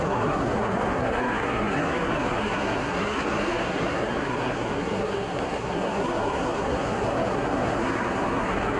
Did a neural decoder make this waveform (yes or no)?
yes